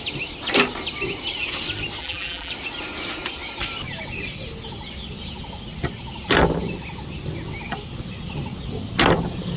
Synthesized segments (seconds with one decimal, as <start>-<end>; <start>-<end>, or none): 2.0-2.5